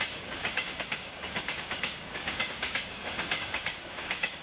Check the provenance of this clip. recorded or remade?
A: remade